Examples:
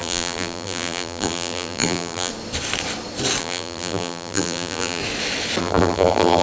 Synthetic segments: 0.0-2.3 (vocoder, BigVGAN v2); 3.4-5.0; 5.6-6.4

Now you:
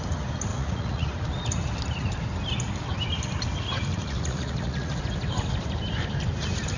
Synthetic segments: 0.5-1.1 (vocoder, Vocos); 3.9-5.0

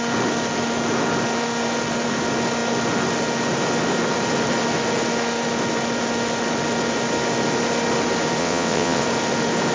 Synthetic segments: 8.4-9.0 (vocoder, WaveNeXt)

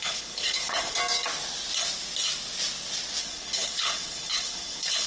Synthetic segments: 0.0-1.0 (codec, HILCodec); 3.2-5.1

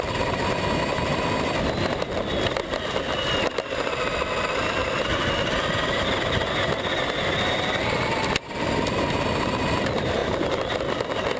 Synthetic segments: none

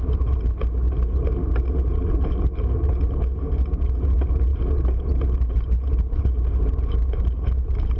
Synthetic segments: none

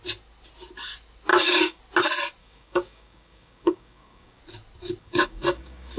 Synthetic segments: 1.3-1.8 (codec, DAC); 2.4-4.4; 5.0-6.0